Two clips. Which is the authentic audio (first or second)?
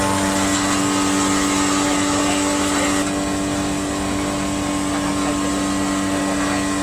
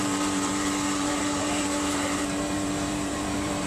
first